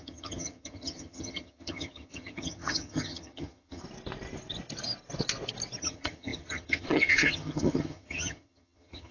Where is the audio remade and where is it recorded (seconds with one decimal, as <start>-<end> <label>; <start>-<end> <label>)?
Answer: 0.0-3.8 remade; 3.8-5.8 recorded; 5.8-9.1 remade